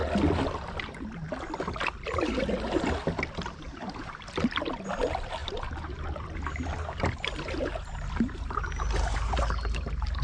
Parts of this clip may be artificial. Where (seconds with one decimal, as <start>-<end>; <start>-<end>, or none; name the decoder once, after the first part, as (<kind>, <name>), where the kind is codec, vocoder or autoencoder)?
5.4-9.4 (vocoder, BigVGAN v2)